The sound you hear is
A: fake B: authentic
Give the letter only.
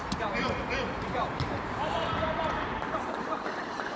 A